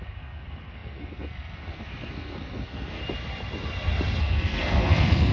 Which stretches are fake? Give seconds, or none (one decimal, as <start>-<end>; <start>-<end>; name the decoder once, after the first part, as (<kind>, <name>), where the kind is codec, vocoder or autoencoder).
0.0-3.0 (codec, SNAC); 4.2-5.3